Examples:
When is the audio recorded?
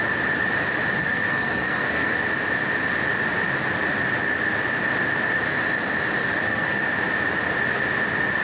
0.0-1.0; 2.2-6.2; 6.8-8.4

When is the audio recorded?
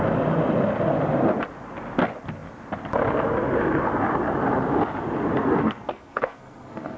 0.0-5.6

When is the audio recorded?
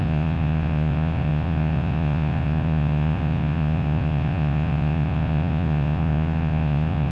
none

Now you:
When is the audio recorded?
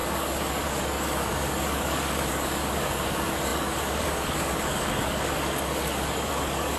none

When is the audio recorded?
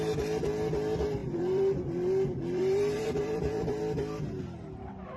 0.0-1.2; 3.8-5.2